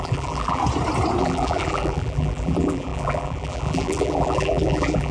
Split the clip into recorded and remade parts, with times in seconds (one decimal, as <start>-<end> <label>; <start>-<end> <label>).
0.0-0.6 remade; 0.6-1.2 recorded; 1.2-5.1 remade